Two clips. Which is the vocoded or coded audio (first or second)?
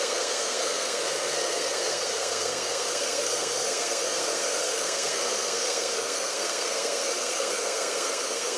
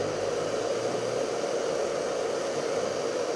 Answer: first